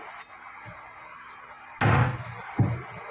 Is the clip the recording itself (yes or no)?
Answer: yes